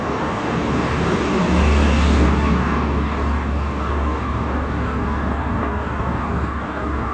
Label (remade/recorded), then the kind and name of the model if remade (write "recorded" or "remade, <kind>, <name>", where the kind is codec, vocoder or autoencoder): remade, codec, DAC